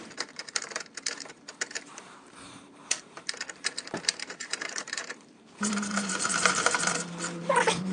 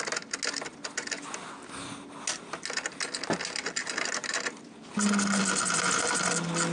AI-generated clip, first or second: first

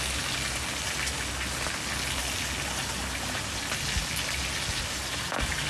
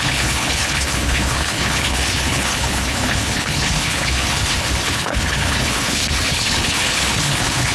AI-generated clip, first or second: second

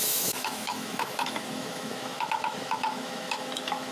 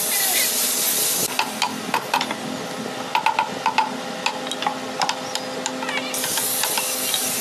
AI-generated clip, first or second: first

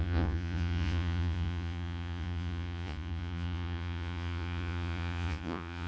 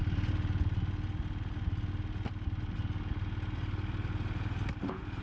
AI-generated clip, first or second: first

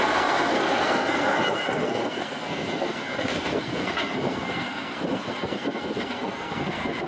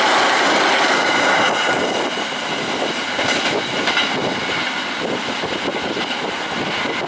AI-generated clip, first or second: first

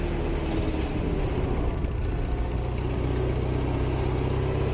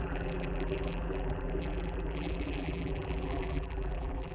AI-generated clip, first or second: second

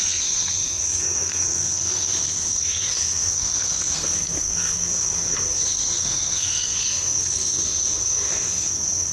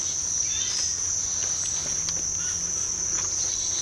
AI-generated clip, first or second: first